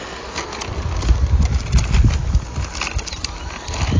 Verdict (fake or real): real